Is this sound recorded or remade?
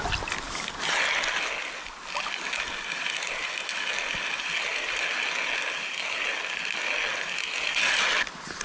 recorded